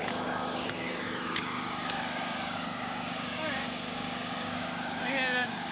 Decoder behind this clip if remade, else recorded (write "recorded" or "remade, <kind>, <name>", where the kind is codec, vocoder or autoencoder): remade, codec, DAC